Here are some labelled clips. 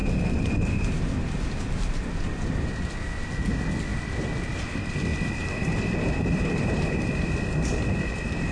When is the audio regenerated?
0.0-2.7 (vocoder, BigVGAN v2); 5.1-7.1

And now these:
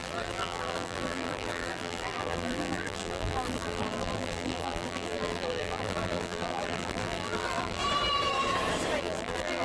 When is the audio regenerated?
0.0-7.8 (vocoder, BigVGAN v2); 9.0-9.6

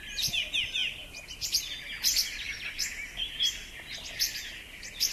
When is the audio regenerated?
none

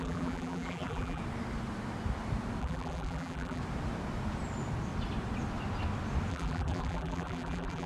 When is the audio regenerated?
0.0-1.2 (vocoder, BigVGAN v2); 2.6-3.6; 6.3-7.9

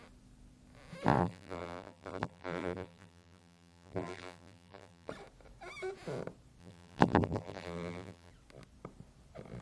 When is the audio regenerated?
1.2-5.1 (vocoder, BigVGAN v2); 6.6-8.3

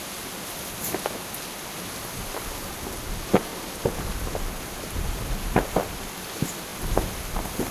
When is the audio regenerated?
2.0-7.7 (vocoder, BigVGAN v2)

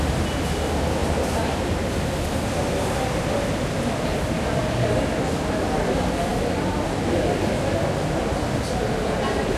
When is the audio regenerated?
none